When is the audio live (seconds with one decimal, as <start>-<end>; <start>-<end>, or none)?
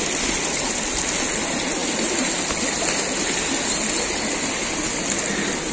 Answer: 0.0-5.7